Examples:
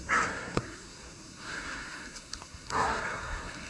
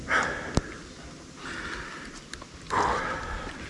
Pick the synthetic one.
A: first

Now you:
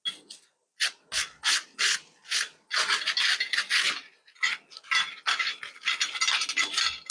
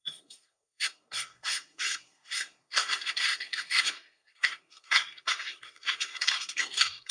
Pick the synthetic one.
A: second